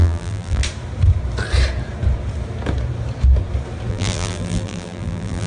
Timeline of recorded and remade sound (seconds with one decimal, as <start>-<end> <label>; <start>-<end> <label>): 0.0-0.6 remade; 0.6-3.9 recorded; 3.9-5.5 remade